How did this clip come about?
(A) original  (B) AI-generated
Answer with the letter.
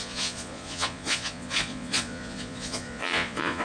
B